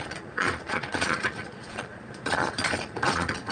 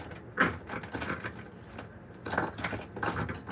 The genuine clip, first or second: second